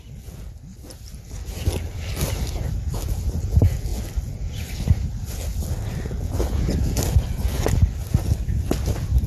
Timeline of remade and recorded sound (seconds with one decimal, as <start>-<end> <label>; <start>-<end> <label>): 0.0-9.3 recorded